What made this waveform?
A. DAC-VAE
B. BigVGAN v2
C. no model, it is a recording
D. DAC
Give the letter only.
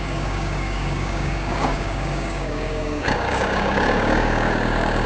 D